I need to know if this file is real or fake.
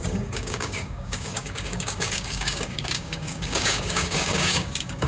fake